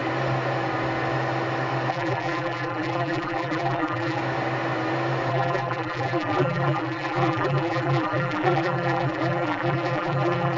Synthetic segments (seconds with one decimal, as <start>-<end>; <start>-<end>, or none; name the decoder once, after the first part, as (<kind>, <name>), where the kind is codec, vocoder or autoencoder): 1.9-4.2 (vocoder, BigVGAN v2); 5.3-10.6